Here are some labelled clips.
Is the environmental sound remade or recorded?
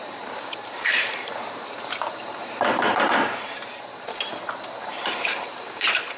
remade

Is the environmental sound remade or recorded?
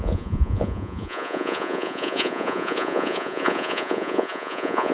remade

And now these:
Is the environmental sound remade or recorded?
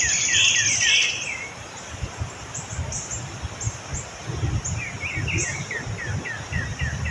recorded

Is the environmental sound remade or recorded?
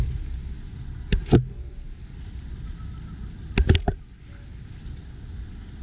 recorded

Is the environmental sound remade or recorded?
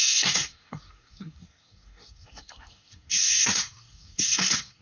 remade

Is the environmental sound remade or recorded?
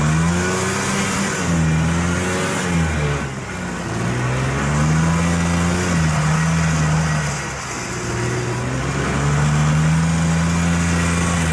recorded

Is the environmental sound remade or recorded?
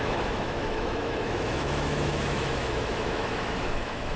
remade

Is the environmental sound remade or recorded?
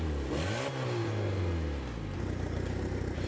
recorded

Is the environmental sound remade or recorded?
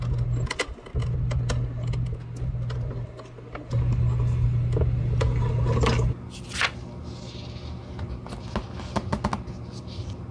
recorded